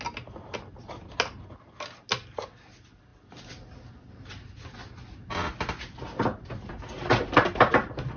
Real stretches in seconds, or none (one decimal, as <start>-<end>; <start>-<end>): 0.0-8.2